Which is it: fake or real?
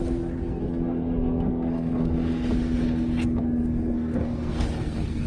fake